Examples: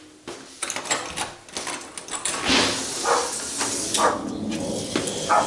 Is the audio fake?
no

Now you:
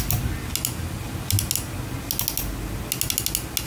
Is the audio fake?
no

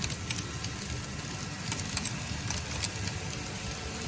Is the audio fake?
no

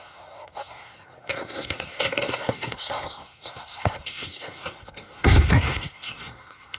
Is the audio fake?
yes